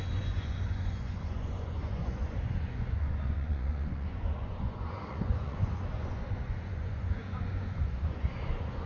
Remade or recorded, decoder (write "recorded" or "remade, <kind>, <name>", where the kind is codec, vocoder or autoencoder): remade, vocoder, Vocos